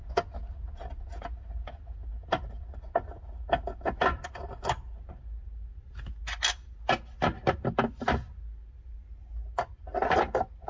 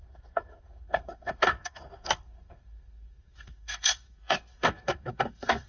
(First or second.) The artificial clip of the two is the second